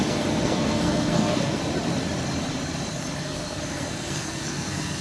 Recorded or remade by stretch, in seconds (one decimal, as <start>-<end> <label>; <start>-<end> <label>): 0.0-1.6 remade; 1.6-3.2 recorded; 3.2-5.0 remade